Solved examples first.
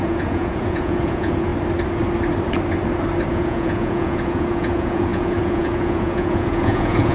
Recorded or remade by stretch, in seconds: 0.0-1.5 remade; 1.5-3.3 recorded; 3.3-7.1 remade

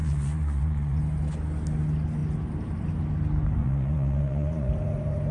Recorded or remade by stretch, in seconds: 0.0-1.0 remade; 1.0-3.6 recorded; 3.6-4.7 remade; 4.7-5.3 recorded

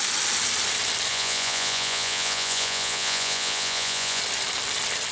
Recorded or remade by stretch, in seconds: 0.0-1.1 recorded; 1.1-4.2 remade; 4.2-5.1 recorded